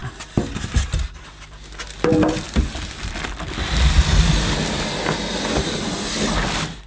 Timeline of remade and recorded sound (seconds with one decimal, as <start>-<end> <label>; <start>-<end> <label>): 0.0-6.9 recorded